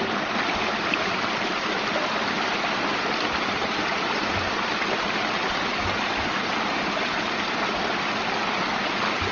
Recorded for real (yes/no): yes